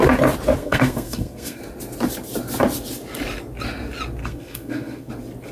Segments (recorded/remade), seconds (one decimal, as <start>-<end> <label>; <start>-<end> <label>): 0.0-0.6 recorded; 0.6-1.6 remade; 1.6-4.2 recorded; 4.2-5.1 remade; 5.1-5.5 recorded